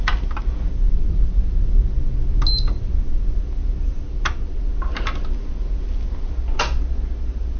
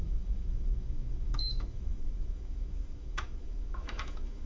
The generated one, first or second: second